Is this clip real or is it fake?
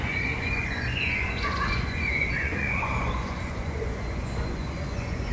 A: fake